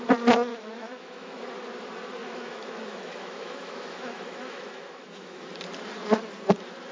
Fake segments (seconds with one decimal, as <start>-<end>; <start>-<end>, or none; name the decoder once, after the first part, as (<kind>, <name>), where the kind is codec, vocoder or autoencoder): 0.5-1.4 (autoencoder, DAC-VAE); 2.2-5.5